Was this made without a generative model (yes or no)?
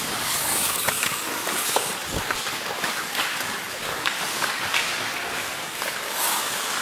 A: no